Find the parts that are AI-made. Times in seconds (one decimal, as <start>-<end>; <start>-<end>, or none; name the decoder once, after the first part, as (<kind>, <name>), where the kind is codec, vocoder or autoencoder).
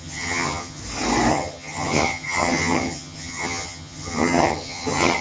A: 0.0-0.8 (vocoder, HiFi-GAN); 1.3-5.2